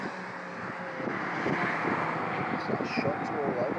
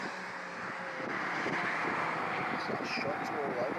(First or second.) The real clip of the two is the first